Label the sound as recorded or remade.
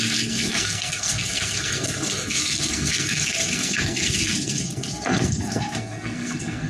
remade